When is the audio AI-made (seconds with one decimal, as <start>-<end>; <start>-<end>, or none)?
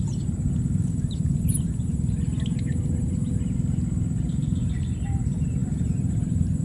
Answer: none